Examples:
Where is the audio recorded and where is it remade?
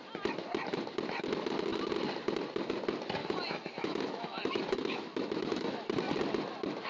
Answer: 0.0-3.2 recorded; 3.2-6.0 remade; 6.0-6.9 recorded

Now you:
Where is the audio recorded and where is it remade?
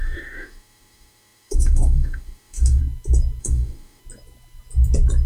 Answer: 0.0-2.8 remade; 2.8-3.4 recorded; 3.4-4.0 remade; 4.0-5.3 recorded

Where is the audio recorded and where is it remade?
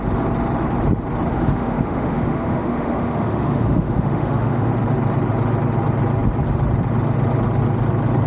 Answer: 0.0-1.3 recorded; 1.3-4.7 remade; 4.7-8.3 recorded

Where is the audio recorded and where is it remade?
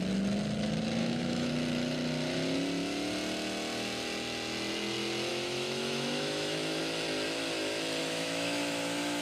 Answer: 0.0-1.0 recorded; 1.0-1.5 remade; 1.5-5.3 recorded; 5.3-6.8 remade; 6.8-8.0 recorded; 8.0-9.2 remade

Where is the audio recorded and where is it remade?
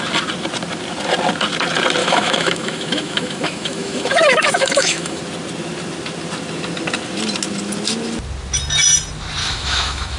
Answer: 0.0-2.0 recorded; 2.0-5.2 remade; 5.2-9.4 recorded; 9.4-10.2 remade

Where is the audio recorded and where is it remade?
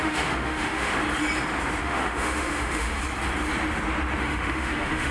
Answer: 0.0-0.9 remade; 0.9-1.8 recorded; 1.8-3.0 remade; 3.0-4.2 recorded; 4.2-5.1 remade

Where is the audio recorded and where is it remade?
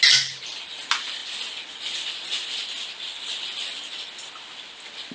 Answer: 0.0-5.1 recorded